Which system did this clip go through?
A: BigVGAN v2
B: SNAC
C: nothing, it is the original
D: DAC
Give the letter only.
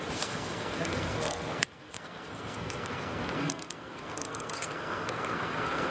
B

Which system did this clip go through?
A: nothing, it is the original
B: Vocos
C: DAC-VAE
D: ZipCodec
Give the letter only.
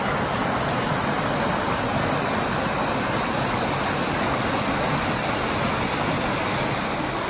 A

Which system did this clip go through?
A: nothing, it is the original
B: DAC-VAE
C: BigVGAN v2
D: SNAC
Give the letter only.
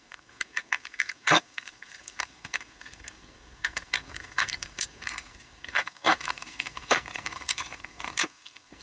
D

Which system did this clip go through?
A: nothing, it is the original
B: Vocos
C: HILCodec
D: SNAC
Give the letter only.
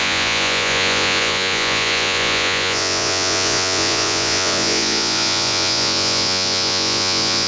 B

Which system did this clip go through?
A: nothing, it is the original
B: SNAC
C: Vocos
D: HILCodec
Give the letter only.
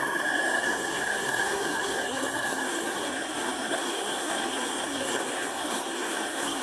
B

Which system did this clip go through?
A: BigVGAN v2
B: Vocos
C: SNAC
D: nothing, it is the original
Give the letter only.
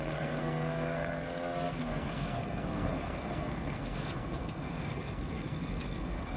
C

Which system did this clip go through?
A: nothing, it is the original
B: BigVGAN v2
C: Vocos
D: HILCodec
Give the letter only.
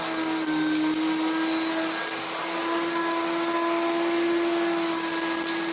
A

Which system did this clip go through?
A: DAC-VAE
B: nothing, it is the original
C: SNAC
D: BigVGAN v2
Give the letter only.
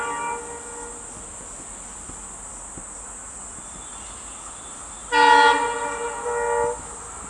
B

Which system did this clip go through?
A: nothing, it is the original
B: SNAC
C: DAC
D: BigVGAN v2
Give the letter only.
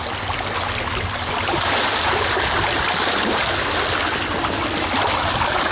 A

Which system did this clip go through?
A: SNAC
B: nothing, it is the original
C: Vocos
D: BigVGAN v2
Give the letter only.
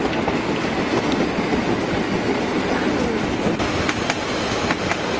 B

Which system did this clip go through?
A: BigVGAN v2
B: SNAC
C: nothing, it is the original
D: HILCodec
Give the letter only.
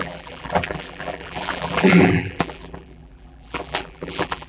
A